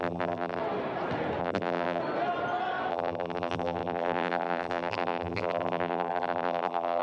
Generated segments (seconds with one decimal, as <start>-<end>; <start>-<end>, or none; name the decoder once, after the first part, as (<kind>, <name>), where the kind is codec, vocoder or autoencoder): 0.0-0.6 (vocoder, BigVGAN v2); 1.4-2.0; 2.9-7.0